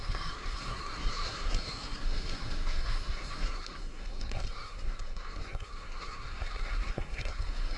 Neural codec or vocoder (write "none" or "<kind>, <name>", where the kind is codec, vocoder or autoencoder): codec, SNAC